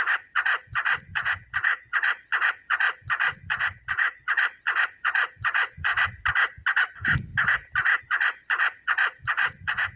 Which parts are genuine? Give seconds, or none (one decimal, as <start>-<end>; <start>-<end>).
5.9-6.8; 7.3-8.0